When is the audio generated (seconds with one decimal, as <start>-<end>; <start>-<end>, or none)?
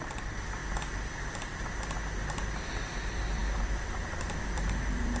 0.0-0.6; 3.0-5.2